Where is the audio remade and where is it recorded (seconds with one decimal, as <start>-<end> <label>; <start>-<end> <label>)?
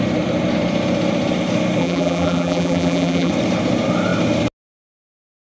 0.0-1.8 recorded; 1.8-3.3 remade; 3.3-5.5 recorded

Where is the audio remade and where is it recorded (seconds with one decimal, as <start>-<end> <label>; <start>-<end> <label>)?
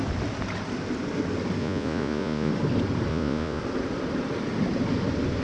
0.0-1.6 recorded; 1.6-2.5 remade; 2.5-3.1 recorded; 3.1-3.6 remade; 3.6-5.4 recorded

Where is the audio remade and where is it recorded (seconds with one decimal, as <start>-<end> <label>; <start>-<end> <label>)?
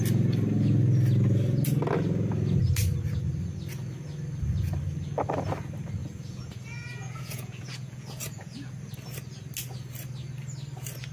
0.0-6.0 recorded; 6.0-8.7 remade; 8.7-11.1 recorded